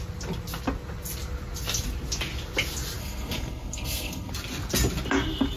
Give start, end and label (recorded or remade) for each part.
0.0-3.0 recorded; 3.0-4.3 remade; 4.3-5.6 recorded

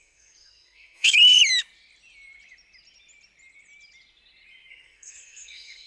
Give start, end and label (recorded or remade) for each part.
0.0-1.2 remade; 1.2-4.7 recorded; 4.7-5.9 remade

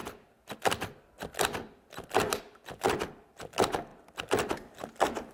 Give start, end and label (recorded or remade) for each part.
0.0-5.3 recorded

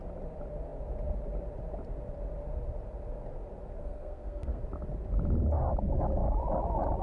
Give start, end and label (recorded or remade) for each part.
0.0-3.8 recorded; 3.8-4.6 remade; 4.6-7.0 recorded

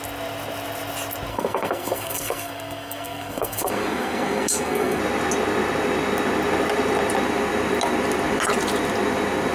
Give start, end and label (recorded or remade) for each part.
0.0-1.3 recorded; 1.3-5.0 remade; 5.0-9.5 recorded

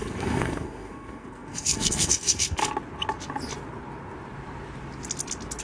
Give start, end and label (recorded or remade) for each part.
0.0-2.6 remade; 2.6-5.6 recorded